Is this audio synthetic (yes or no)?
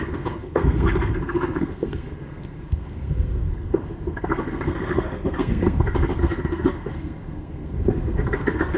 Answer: yes